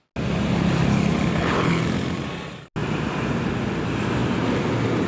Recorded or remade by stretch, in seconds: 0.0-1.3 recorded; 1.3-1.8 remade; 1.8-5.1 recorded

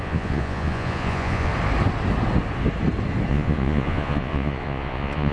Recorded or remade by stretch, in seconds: 0.0-1.5 remade; 1.5-3.3 recorded; 3.3-5.3 remade

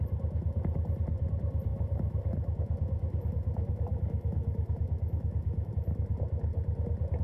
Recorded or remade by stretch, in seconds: 0.0-1.7 recorded; 1.7-5.7 remade; 5.7-7.2 recorded

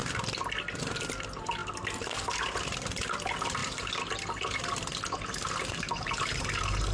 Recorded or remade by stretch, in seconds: 0.0-6.9 recorded

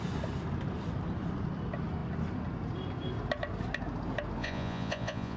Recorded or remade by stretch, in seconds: 0.0-4.4 recorded; 4.4-5.4 remade

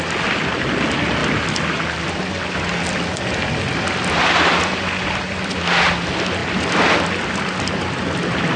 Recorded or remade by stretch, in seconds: 0.0-8.6 recorded